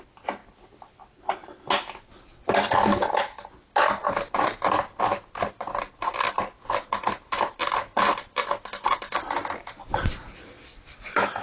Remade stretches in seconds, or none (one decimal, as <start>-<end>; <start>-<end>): 0.4-1.6; 4.0-8.4